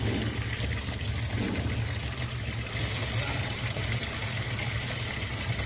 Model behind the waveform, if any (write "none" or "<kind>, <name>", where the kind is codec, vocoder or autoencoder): none